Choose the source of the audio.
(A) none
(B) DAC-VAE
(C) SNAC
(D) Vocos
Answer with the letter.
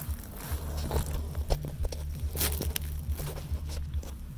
A